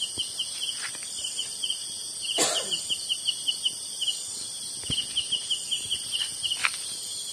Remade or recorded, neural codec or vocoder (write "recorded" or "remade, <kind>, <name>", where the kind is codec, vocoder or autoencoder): recorded